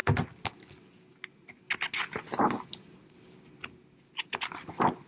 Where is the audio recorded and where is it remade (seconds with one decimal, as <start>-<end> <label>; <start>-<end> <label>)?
0.0-5.1 recorded